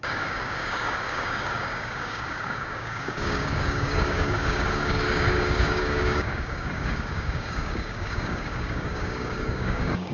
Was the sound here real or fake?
fake